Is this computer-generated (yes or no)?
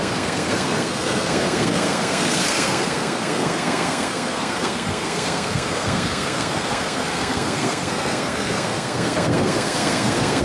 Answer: yes